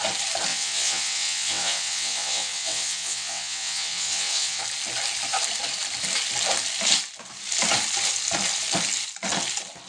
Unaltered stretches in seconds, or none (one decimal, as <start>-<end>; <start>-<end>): 0.0-0.5; 4.6-9.9